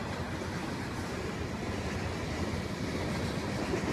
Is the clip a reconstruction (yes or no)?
no